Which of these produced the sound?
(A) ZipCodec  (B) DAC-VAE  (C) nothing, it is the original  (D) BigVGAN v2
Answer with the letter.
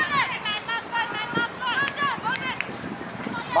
C